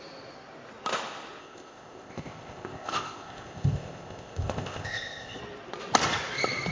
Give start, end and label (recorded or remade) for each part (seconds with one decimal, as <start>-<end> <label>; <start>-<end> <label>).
0.0-1.4 recorded; 1.4-5.4 remade; 5.4-6.7 recorded